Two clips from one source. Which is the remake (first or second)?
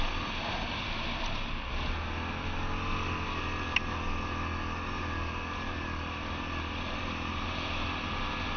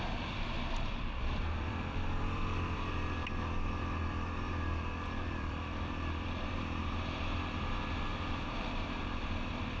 second